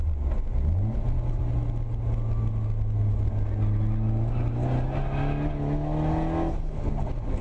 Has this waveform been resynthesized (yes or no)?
no